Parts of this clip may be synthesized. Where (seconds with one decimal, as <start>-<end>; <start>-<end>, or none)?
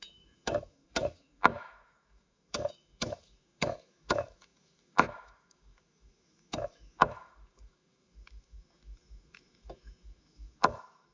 0.0-11.1